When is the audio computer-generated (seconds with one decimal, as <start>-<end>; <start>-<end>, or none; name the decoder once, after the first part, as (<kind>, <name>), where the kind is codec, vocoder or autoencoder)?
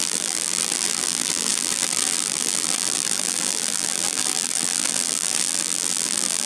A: 0.0-6.5 (vocoder, BigVGAN v2)